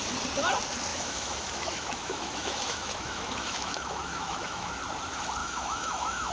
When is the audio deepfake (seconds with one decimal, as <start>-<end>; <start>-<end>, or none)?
0.9-4.7; 5.4-6.3